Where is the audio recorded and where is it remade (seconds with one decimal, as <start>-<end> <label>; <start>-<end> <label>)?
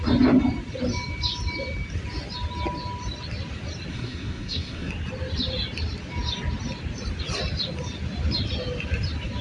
0.0-3.9 recorded; 3.9-4.9 remade; 4.9-9.4 recorded